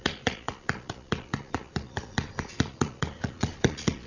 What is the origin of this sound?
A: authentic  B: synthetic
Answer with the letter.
B